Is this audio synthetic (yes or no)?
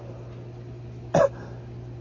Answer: no